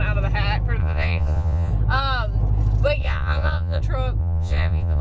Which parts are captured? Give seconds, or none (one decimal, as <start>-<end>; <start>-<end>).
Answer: 0.0-0.8; 1.7-3.0; 3.8-4.2